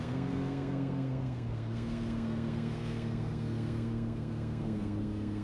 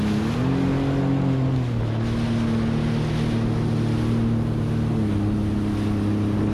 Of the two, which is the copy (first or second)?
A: first